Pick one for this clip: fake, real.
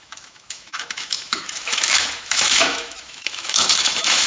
fake